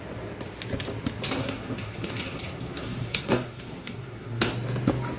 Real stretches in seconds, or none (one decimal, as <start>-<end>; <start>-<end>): 0.0-1.4; 4.5-5.2